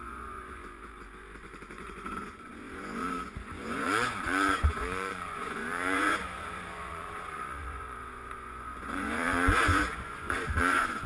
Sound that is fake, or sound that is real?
fake